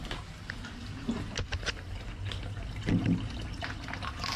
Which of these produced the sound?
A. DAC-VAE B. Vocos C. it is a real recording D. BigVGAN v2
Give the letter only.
C